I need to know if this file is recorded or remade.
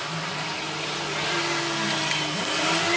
recorded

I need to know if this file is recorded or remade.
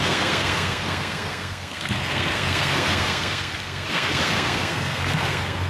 remade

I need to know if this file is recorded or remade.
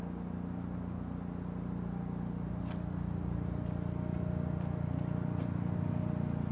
recorded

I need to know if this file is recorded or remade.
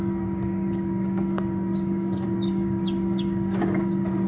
remade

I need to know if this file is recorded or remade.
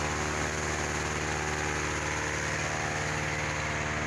recorded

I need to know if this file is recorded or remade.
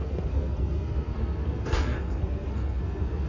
remade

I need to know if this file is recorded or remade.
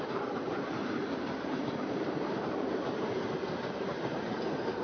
remade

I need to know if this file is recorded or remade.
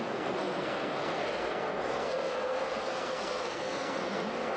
remade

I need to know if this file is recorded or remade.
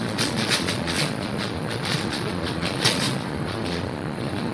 remade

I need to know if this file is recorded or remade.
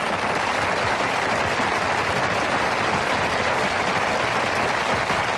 recorded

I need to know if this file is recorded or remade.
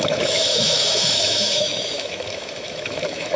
remade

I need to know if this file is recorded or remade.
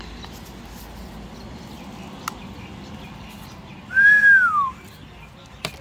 recorded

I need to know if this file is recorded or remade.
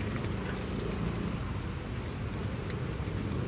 recorded